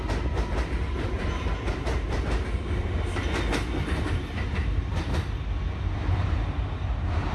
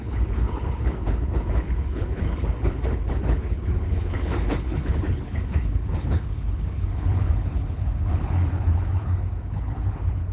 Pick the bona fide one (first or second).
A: first